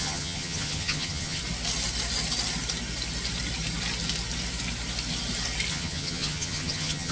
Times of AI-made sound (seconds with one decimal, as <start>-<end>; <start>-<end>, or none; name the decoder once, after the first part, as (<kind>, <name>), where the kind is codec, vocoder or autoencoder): 0.0-1.4 (vocoder, HiFi-GAN); 5.7-7.1